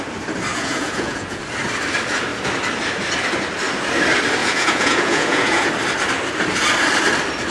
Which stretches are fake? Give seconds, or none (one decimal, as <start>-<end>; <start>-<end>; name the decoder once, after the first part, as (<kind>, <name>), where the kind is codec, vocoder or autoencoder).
0.5-1.4 (vocoder, Vocos); 4.4-5.7